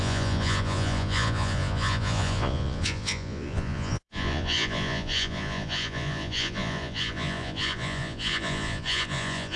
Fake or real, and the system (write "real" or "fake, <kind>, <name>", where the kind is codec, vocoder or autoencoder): fake, vocoder, Vocos